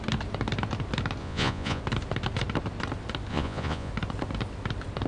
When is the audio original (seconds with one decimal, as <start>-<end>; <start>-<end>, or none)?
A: 0.0-1.2; 1.8-3.3; 3.9-5.1